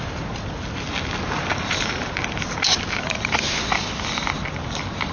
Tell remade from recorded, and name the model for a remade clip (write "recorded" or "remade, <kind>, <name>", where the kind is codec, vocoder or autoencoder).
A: recorded